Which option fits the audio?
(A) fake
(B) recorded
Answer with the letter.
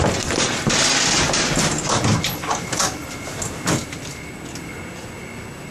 B